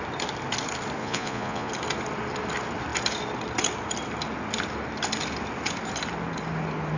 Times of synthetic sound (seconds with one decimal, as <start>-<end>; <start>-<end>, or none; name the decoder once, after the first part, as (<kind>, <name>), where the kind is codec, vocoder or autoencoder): 1.0-1.7 (vocoder, Vocos)